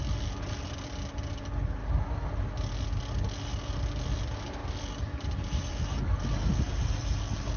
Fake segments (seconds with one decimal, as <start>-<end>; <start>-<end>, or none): none